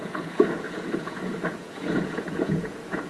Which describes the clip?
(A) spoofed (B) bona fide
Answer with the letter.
A